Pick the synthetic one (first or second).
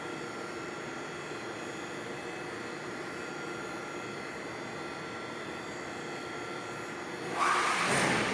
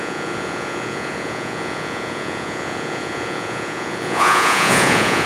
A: second